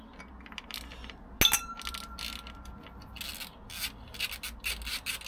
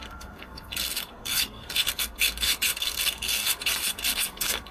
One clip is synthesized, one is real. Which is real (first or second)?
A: first